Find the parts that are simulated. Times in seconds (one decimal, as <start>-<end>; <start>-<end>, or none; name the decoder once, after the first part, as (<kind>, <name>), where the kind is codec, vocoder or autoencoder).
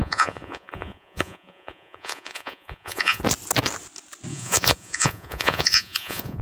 0.0-3.2 (vocoder, Vocos); 4.3-6.4